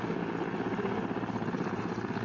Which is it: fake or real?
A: real